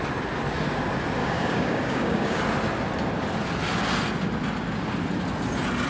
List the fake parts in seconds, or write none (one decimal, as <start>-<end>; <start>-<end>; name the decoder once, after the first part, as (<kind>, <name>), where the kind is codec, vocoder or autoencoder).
1.2-2.4 (codec, DAC)